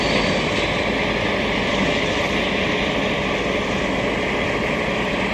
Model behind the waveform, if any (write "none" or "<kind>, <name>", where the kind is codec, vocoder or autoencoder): none